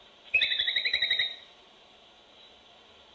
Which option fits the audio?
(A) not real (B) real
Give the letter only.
A